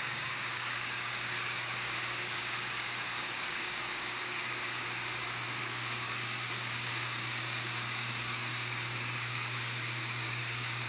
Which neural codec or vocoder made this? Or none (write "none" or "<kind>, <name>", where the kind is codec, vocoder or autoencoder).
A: codec, DAC